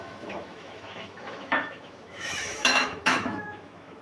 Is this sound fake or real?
fake